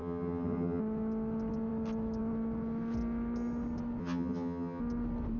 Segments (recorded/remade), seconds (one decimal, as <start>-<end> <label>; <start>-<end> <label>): 0.0-0.8 remade; 0.8-4.0 recorded; 4.0-4.8 remade; 4.8-5.4 recorded